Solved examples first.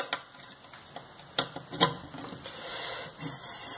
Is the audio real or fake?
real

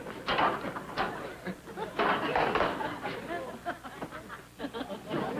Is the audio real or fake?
real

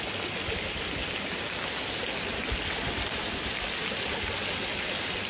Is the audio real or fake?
real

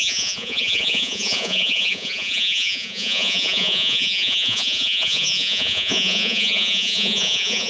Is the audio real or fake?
fake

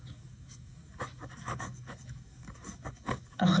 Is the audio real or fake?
fake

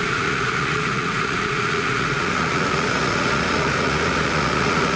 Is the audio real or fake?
fake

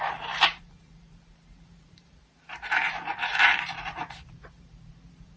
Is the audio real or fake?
fake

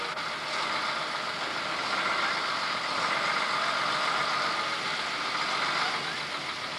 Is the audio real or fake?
real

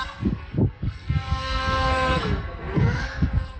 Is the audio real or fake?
fake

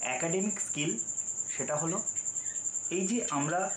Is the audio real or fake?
real